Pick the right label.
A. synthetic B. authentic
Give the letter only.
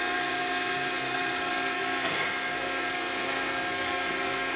A